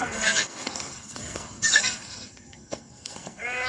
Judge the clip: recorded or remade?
remade